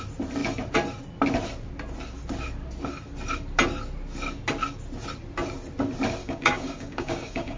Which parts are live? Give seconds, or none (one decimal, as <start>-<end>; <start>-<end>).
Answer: 0.0-6.2